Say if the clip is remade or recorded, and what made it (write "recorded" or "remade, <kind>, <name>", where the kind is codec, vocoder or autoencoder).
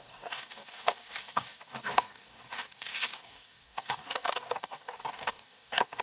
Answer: remade, codec, DAC